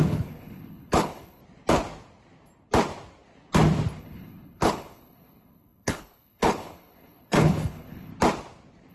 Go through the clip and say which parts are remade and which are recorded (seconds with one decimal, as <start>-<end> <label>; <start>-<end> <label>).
0.0-1.4 remade; 1.4-4.0 recorded; 4.0-8.1 remade; 8.1-8.9 recorded